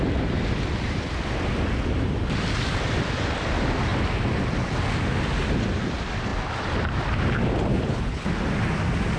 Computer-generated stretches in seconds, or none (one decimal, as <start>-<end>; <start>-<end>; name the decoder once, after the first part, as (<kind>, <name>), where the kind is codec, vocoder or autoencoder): 7.7-8.3 (codec, HILCodec)